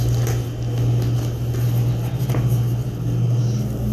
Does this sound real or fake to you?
real